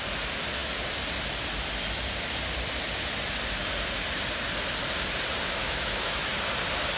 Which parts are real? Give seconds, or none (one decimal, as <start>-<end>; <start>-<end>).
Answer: 0.0-5.6; 6.3-7.0